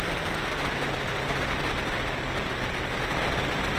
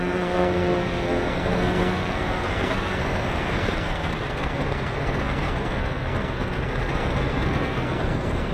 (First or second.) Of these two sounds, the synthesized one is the second